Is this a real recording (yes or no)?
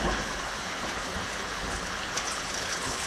no